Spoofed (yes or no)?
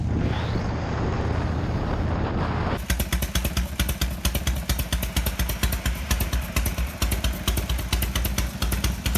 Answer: no